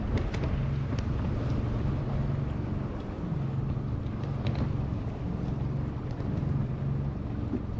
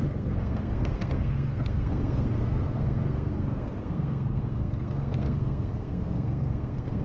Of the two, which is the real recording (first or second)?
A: first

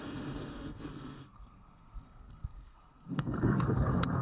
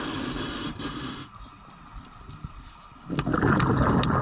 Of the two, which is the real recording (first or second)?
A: second